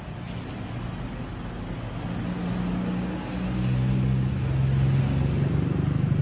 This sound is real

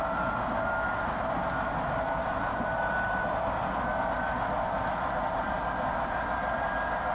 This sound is real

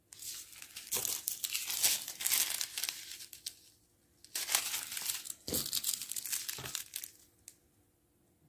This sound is real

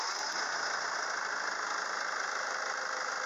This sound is real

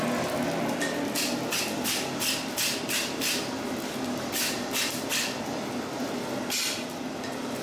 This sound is real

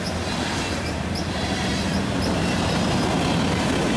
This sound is real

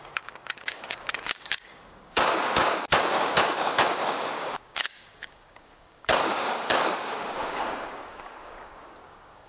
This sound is fake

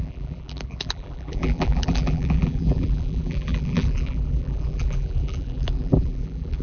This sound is fake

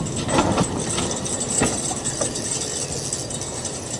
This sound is real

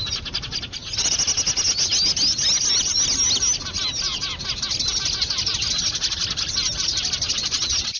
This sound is real